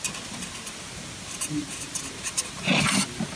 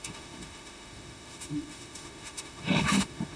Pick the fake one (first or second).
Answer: second